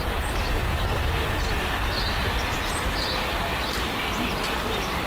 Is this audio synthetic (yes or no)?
no